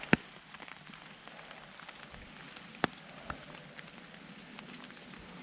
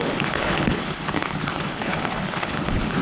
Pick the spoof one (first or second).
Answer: second